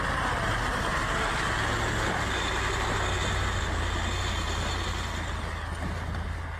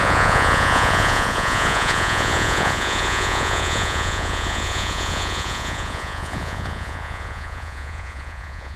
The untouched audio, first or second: first